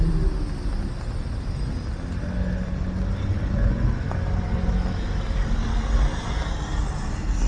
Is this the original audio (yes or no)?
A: yes